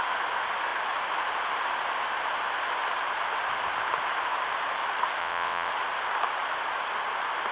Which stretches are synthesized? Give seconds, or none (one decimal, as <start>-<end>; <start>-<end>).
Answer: 5.2-5.7

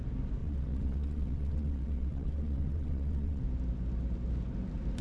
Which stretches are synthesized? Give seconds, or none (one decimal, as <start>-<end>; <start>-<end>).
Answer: 0.4-3.4

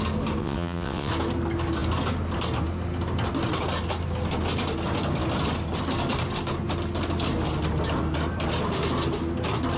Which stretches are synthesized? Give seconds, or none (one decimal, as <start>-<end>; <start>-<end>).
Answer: 0.4-1.1